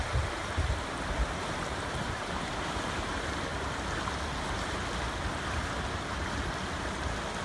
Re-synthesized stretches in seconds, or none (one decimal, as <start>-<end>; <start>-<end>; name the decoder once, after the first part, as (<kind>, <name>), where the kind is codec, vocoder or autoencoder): 0.4-3.1 (vocoder, BigVGAN v2)